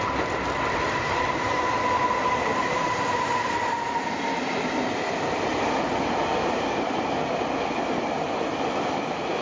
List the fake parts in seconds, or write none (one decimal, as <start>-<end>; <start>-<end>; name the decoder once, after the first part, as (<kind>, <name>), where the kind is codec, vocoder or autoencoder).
2.5-6.2 (vocoder, BigVGAN v2)